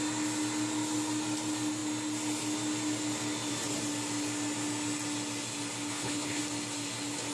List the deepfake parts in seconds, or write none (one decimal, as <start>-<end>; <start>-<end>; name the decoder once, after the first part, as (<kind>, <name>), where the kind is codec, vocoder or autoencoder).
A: 5.9-6.4 (codec, HILCodec)